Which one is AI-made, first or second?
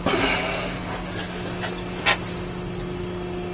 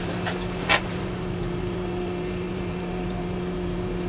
second